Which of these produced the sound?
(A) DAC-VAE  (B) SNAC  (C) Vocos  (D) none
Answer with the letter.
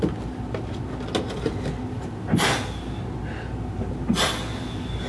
D